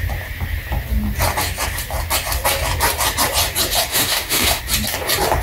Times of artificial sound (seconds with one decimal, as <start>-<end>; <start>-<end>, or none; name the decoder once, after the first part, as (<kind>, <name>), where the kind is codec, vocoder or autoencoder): 3.9-4.6 (autoencoder, DAC-VAE)

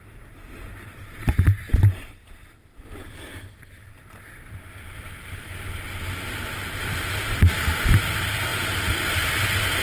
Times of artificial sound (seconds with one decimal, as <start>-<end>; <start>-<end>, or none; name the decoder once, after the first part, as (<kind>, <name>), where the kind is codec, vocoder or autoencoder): none